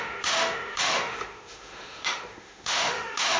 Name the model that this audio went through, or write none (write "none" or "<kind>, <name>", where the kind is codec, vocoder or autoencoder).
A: autoencoder, DAC-VAE